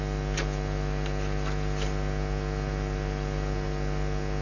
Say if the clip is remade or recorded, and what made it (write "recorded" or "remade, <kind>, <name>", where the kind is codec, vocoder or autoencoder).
recorded